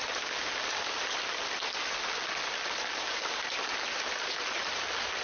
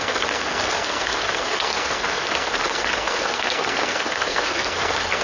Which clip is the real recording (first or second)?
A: first